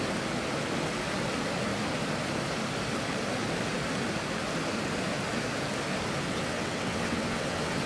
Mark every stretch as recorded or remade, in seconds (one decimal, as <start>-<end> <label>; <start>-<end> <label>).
0.0-6.3 recorded; 6.3-7.9 remade